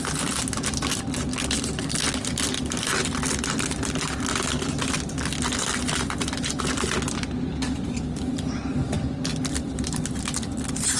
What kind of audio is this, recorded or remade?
recorded